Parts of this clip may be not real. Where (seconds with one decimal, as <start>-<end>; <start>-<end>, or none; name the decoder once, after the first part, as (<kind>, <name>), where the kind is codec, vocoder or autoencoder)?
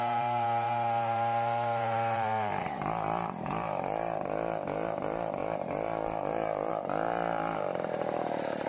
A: 0.0-8.7 (vocoder, BigVGAN v2)